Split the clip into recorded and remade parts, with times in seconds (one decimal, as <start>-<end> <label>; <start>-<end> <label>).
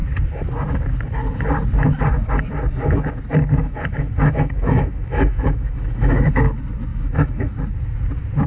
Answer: 0.0-3.6 recorded; 3.6-6.5 remade; 6.5-6.9 recorded; 6.9-7.5 remade; 7.5-8.5 recorded